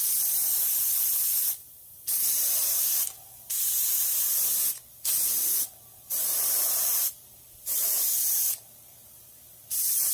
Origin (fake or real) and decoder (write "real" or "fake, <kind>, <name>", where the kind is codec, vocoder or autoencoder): real